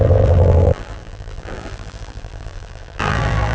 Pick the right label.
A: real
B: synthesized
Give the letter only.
B